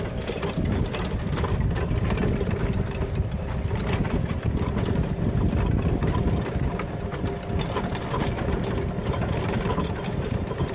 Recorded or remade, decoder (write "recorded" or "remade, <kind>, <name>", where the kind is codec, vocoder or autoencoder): recorded